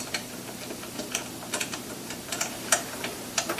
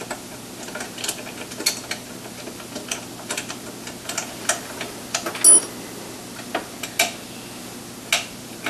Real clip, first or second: second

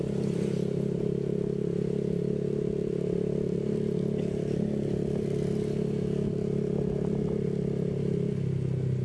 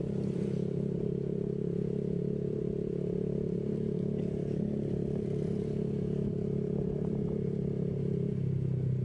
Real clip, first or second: first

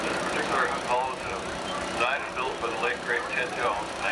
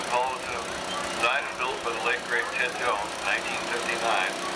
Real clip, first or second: second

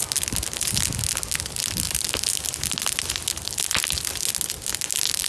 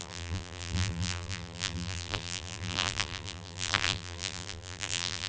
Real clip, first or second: first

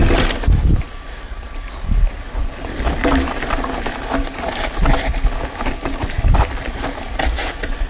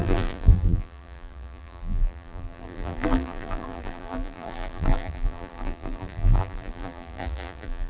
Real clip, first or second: first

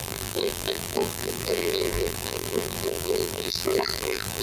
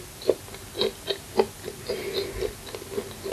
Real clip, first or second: second